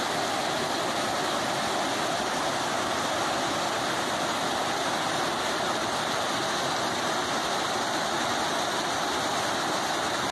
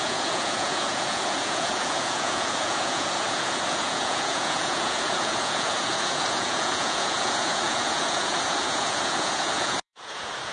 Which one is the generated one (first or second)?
second